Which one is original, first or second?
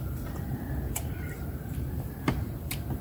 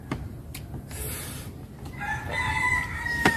second